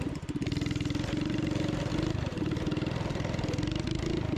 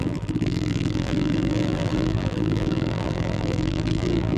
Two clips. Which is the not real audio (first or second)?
second